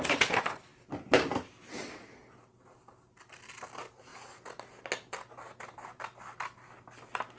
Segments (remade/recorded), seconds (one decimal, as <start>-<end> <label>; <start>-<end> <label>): 0.0-7.4 recorded